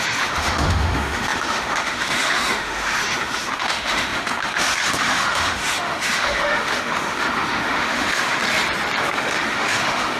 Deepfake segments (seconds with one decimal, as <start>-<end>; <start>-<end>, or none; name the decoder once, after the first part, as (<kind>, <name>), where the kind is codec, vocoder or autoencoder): 0.0-8.4 (autoencoder, DAC-VAE); 9.0-10.2